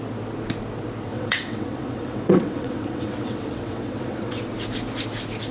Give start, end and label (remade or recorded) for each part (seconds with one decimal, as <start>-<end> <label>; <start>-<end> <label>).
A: 0.0-1.1 recorded; 1.1-4.4 remade; 4.4-5.5 recorded